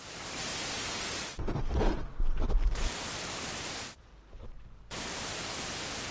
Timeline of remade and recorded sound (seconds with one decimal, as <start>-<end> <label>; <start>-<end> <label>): 0.0-0.5 remade; 0.5-1.6 recorded; 1.6-4.1 remade; 4.1-6.1 recorded